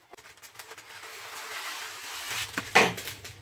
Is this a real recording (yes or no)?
yes